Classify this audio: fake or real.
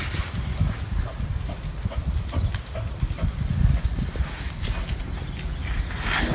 real